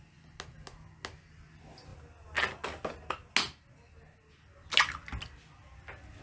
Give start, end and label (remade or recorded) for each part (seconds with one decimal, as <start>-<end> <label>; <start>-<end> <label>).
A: 0.0-6.2 recorded